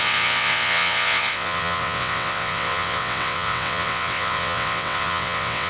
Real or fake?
fake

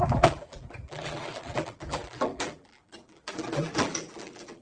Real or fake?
fake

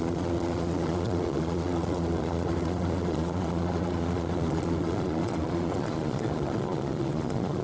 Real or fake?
fake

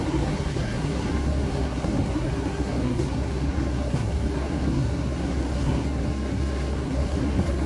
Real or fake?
fake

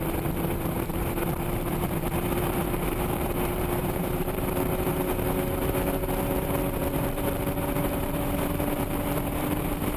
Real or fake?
fake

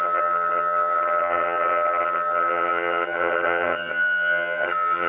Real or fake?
fake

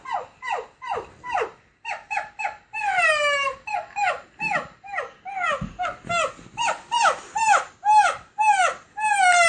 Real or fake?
real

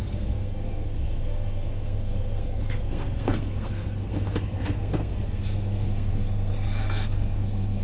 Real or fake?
fake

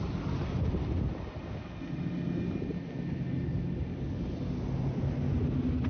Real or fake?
real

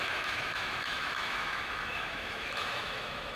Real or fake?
fake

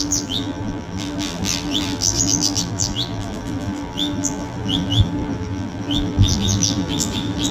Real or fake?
fake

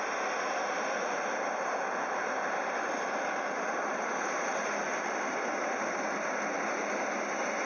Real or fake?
real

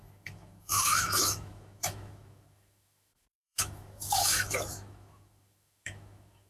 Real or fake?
fake